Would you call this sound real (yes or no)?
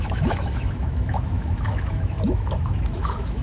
no